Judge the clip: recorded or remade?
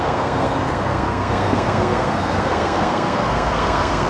remade